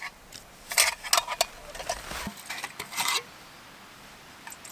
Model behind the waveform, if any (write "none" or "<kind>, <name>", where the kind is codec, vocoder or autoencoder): none